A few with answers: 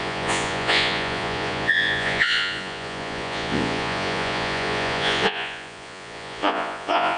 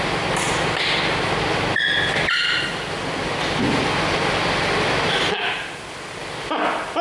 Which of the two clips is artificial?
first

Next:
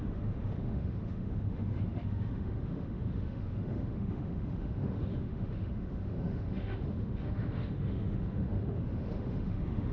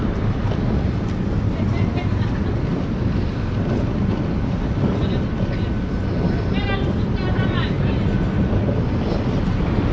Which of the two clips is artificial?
first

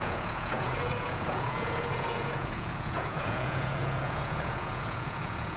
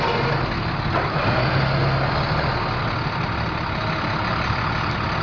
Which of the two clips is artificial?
first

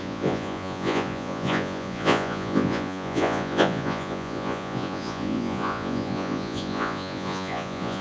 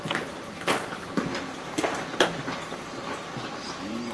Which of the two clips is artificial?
first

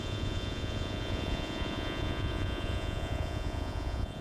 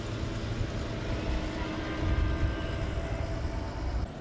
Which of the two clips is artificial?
first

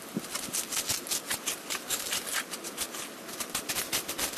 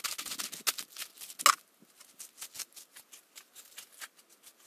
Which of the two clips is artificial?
first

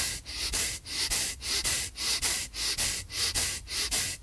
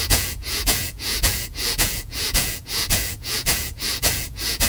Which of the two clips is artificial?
second